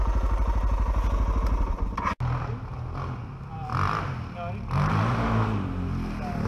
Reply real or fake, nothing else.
real